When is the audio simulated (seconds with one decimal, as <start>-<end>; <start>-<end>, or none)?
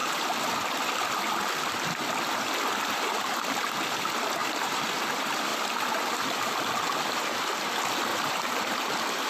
0.0-0.5; 4.4-4.9; 8.1-8.7